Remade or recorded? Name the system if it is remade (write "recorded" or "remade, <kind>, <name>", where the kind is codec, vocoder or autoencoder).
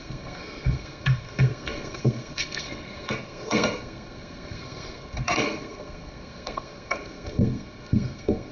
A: remade, codec, SNAC